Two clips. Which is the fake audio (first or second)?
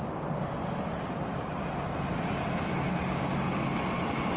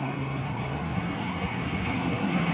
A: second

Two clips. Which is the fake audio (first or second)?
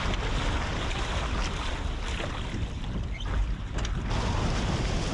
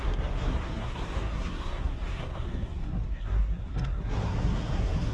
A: second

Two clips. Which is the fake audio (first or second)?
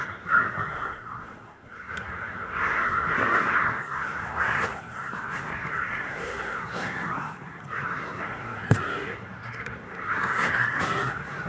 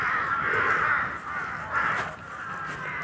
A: first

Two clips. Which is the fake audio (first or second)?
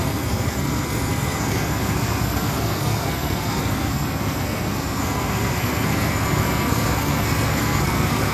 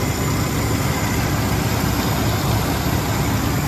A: first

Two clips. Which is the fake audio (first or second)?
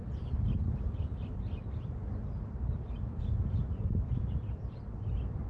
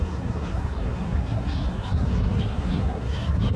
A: second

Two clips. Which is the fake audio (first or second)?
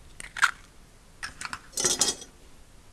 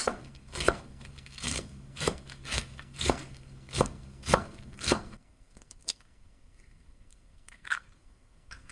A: second